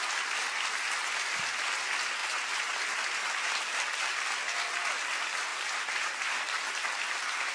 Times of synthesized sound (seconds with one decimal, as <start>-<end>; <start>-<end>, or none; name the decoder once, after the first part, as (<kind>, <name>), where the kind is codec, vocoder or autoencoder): 2.2-2.9 (vocoder, BigVGAN v2)